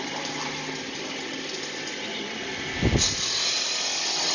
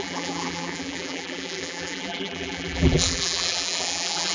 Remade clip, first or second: second